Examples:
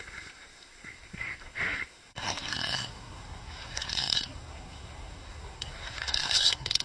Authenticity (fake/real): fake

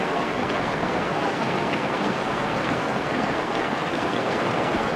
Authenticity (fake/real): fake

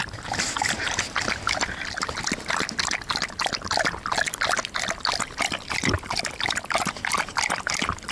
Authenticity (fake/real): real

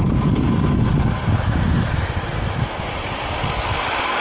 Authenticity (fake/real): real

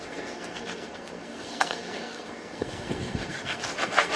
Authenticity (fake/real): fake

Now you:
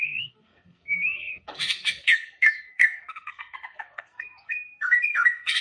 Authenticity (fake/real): fake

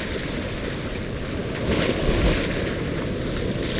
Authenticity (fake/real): real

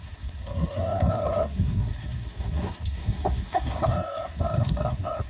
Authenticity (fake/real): fake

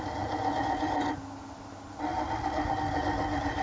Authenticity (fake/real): real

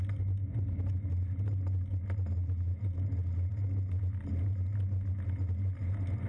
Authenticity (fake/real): real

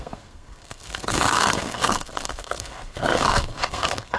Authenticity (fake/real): fake